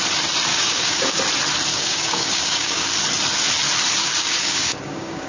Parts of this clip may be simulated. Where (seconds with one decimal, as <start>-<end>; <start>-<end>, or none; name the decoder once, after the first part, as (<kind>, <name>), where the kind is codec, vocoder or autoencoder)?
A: 0.5-1.2 (codec, DAC); 1.7-2.9; 4.0-5.3